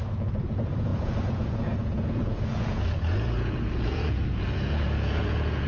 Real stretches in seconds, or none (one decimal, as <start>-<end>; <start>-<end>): none